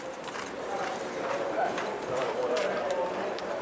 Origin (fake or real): fake